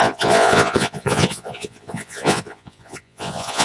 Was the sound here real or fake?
fake